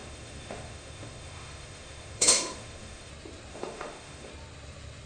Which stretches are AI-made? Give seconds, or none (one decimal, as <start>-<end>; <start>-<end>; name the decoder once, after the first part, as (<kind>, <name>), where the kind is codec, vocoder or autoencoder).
0.0-3.1 (autoencoder, DAC-VAE); 3.5-4.3